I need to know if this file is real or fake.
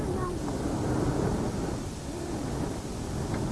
real